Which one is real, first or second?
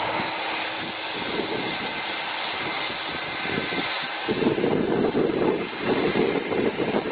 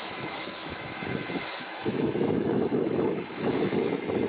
first